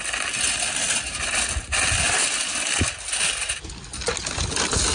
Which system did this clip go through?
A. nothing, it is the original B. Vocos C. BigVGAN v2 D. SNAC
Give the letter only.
A